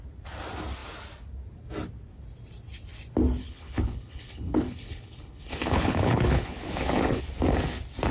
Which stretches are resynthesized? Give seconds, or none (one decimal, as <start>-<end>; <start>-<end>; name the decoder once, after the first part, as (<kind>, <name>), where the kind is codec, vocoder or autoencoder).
3.4-7.2 (codec, HILCodec)